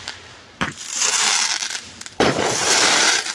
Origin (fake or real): fake